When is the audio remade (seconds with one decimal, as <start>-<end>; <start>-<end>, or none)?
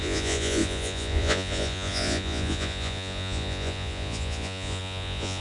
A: 0.0-5.4